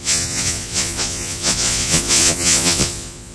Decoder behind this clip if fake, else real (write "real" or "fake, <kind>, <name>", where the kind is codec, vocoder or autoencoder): fake, vocoder, Vocos